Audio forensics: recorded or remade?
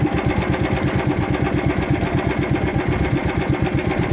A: recorded